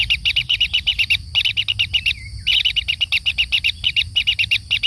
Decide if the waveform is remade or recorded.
recorded